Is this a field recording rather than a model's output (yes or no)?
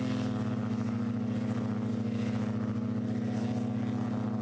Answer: yes